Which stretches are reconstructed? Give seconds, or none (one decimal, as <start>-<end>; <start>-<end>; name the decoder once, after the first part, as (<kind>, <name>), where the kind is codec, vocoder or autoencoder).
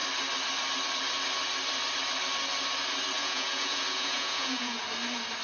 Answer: 3.2-4.8 (vocoder, Vocos)